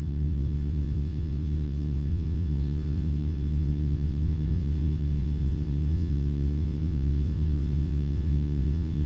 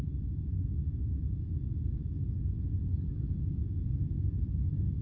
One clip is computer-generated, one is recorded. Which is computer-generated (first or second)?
first